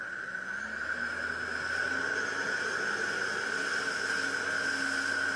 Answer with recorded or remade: recorded